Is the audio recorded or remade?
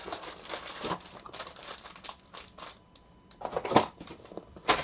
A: recorded